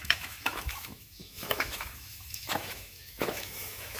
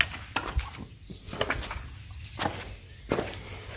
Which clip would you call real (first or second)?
second